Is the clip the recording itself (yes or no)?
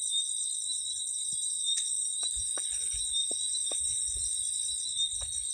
yes